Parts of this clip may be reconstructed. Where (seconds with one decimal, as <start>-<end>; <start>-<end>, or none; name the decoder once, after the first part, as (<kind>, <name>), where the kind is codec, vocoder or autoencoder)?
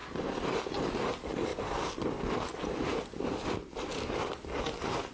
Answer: 1.5-4.6 (vocoder, BigVGAN v2)